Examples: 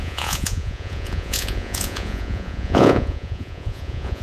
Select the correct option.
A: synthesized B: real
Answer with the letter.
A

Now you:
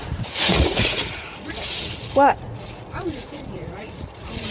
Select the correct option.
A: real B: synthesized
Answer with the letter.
B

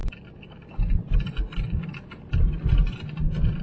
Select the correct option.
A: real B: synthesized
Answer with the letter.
A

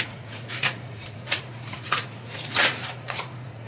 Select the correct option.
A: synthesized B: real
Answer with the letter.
A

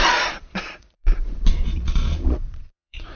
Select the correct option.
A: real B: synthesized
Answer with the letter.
B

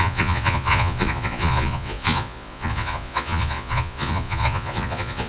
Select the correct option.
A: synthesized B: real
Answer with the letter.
A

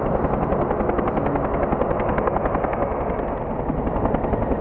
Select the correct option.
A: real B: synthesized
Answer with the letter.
A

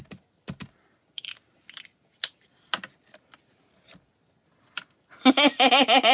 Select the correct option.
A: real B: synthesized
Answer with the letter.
A